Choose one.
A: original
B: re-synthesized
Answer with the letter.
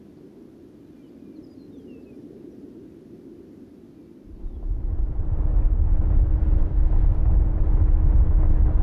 A